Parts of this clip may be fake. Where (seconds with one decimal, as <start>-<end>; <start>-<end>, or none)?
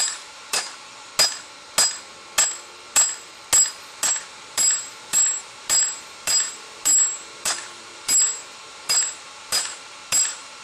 0.0-1.1; 3.7-10.6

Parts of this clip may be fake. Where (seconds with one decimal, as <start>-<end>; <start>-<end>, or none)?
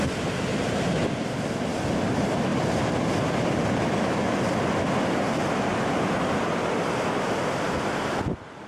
0.5-1.4; 2.5-3.1